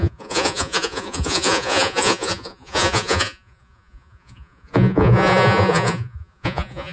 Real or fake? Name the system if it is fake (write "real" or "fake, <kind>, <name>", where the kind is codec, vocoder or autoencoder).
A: fake, vocoder, Vocos